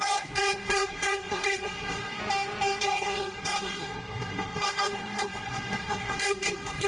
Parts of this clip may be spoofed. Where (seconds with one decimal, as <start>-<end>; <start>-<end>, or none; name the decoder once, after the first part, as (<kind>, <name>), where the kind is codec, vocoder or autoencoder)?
0.0-2.2 (codec, SNAC); 2.8-6.9